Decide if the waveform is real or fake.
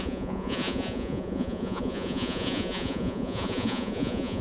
fake